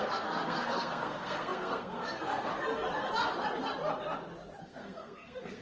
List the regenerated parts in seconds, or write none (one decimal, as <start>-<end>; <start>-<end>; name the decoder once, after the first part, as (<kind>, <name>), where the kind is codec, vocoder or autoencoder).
0.0-2.5 (codec, SNAC); 4.6-5.6